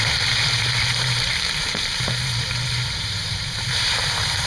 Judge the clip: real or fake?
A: fake